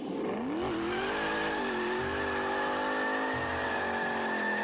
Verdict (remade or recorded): recorded